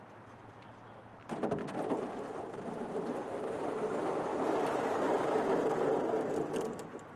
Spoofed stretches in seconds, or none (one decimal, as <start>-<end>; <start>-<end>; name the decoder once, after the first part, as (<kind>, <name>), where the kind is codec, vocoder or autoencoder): 1.6-3.9 (vocoder, BigVGAN v2); 4.3-5.2